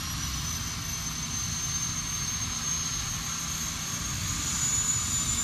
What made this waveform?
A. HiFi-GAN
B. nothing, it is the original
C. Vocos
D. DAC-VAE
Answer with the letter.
B